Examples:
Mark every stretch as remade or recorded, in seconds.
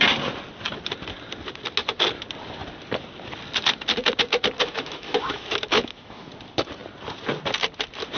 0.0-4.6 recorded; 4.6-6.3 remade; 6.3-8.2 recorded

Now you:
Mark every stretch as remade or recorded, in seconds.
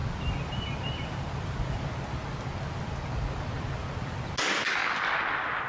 0.0-5.7 recorded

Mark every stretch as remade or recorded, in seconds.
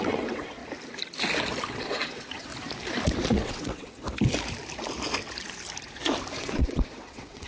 0.0-0.6 remade; 0.6-1.7 recorded; 1.7-2.5 remade; 2.5-3.3 recorded; 3.3-4.0 remade; 4.0-6.4 recorded; 6.4-7.5 remade